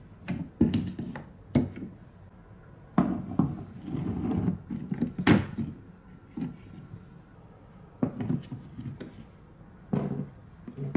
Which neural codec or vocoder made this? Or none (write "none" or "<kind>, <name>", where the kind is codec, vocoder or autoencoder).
none